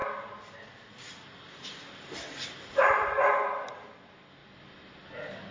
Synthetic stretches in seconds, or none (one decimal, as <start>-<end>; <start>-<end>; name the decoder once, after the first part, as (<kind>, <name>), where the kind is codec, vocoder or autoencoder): 0.0-3.3 (vocoder, BigVGAN v2)

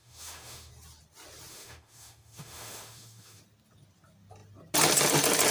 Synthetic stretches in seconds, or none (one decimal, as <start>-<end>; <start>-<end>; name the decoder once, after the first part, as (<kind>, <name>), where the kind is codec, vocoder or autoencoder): 0.0-0.7 (autoencoder, DAC-VAE); 1.5-3.4

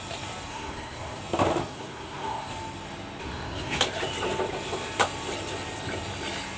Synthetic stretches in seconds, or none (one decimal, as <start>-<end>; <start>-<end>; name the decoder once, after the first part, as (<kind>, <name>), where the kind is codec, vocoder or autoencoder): 0.5-1.2 (codec, SNAC); 1.6-2.5; 3.2-3.8

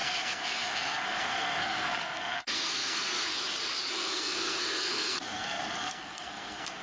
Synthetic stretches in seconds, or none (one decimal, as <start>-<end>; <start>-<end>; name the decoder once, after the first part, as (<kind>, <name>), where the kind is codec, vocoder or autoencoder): 0.0-3.3 (codec, SNAC); 3.9-6.8

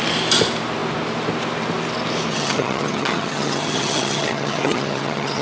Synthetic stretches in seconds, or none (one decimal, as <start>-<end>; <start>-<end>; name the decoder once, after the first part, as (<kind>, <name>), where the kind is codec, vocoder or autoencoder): 2.3-5.4 (vocoder, HiFi-GAN)

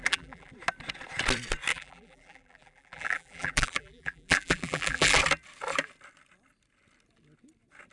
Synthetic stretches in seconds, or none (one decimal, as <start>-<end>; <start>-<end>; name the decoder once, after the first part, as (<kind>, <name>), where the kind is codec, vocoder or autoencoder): 0.0-0.5 (vocoder, BigVGAN v2); 1.7-5.2